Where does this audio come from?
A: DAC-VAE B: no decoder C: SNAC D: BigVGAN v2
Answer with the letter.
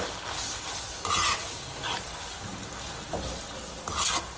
B